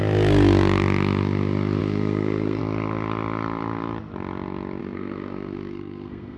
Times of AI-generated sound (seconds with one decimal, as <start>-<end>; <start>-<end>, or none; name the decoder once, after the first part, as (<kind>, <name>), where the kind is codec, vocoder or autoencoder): 1.8-2.6 (codec, SNAC); 4.8-6.4